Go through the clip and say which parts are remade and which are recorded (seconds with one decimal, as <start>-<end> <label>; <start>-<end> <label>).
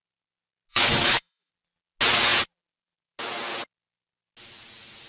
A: 0.0-0.7 recorded; 0.7-1.5 remade; 1.5-5.1 recorded